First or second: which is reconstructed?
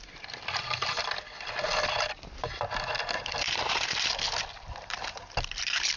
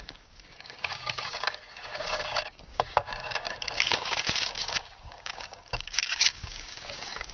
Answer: second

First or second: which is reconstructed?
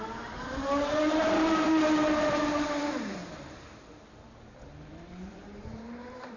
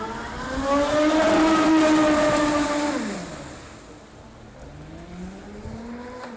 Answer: first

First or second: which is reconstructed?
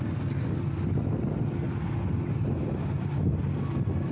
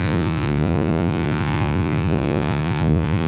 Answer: second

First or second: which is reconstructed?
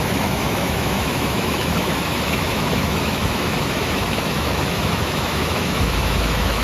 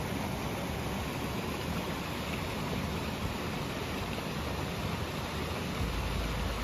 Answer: first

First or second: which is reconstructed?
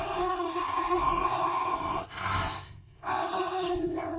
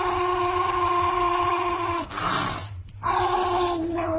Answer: first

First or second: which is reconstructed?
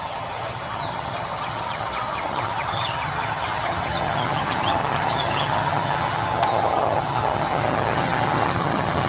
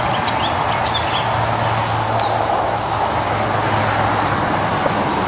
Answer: first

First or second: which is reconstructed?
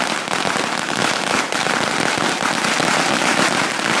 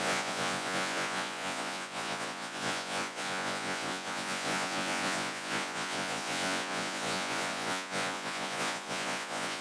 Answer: second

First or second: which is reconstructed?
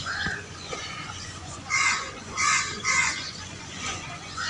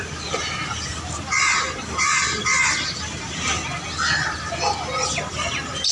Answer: first